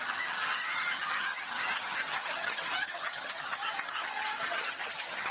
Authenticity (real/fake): fake